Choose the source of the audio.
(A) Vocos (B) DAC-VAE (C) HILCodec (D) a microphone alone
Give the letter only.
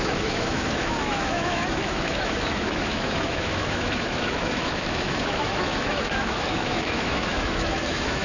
B